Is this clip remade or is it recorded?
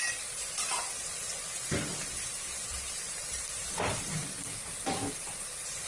remade